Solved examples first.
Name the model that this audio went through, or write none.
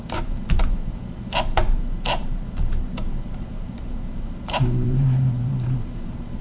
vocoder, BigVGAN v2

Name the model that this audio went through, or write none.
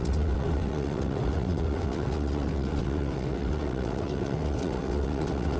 vocoder, WaveNeXt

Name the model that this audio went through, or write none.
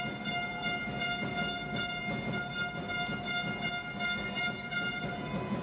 none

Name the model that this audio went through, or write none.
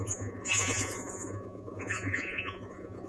vocoder, Vocos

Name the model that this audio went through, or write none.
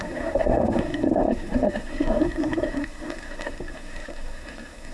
codec, SNAC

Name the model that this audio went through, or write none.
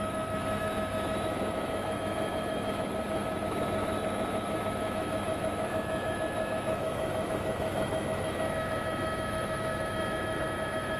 autoencoder, DAC-VAE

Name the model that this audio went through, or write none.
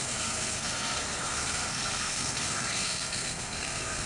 codec, SNAC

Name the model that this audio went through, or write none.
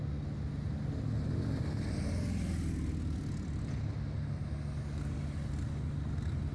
none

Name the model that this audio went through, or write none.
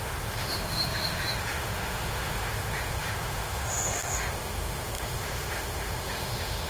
autoencoder, DAC-VAE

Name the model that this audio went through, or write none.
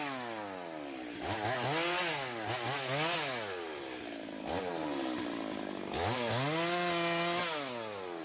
none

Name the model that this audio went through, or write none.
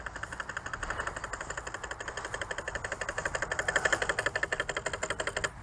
none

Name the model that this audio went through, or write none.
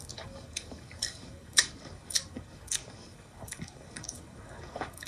codec, DAC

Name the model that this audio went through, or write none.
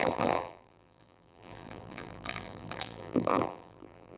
vocoder, BigVGAN v2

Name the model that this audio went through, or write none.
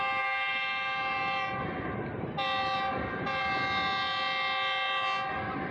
none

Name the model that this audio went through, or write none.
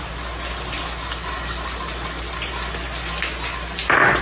none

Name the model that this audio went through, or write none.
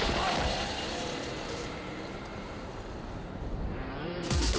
vocoder, BigVGAN v2